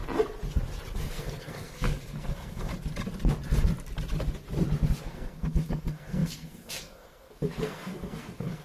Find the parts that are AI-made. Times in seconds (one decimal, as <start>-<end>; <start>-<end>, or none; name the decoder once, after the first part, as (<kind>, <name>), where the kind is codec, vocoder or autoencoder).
1.0-2.7 (codec, SNAC); 5.0-8.6